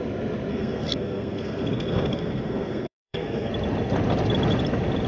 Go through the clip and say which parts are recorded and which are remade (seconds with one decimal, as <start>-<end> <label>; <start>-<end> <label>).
0.0-0.5 recorded; 0.5-3.5 remade; 3.5-5.1 recorded